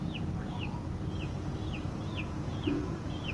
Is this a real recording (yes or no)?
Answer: no